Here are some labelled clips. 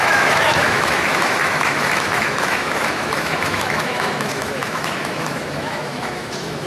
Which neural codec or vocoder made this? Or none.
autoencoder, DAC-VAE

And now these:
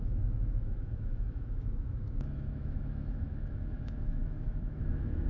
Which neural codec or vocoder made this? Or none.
autoencoder, DAC-VAE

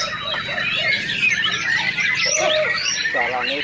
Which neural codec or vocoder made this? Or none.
none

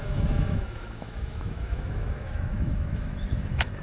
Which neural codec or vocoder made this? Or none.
autoencoder, DAC-VAE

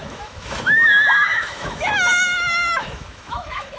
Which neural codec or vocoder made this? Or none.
autoencoder, DAC-VAE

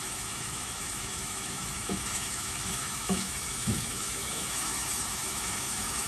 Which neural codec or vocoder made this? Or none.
autoencoder, DAC-VAE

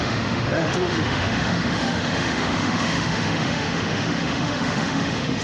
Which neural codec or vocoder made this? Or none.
autoencoder, DAC-VAE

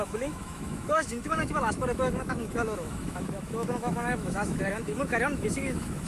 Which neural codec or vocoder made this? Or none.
autoencoder, DAC-VAE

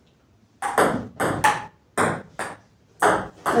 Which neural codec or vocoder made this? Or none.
none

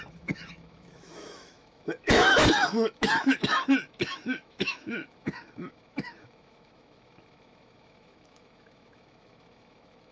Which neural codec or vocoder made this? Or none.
autoencoder, DAC-VAE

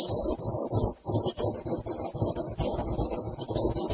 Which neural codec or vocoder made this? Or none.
none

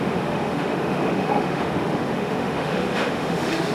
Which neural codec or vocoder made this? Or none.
autoencoder, DAC-VAE